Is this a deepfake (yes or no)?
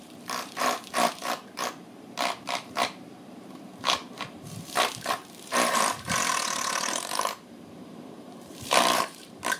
yes